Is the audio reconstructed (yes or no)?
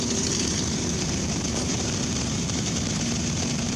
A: yes